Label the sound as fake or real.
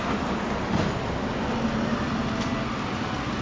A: real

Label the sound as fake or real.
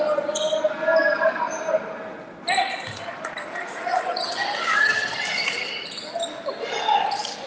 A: real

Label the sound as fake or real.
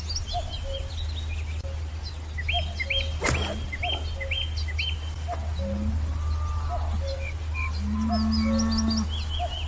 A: real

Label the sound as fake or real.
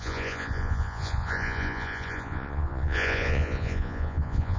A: fake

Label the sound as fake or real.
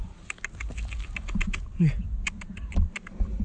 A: real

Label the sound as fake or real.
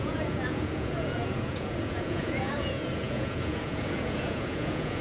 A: fake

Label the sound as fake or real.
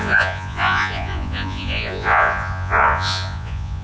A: fake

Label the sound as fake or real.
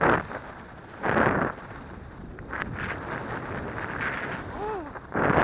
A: real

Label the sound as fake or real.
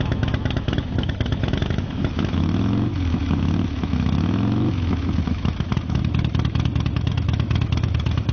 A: fake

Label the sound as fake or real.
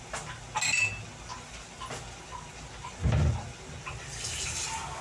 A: real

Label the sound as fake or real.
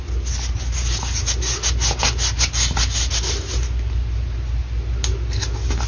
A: real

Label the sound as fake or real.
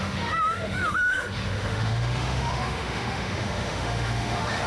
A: fake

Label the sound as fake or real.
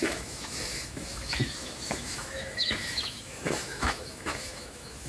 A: fake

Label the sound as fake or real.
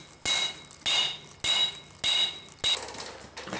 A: real